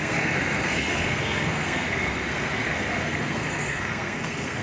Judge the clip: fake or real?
fake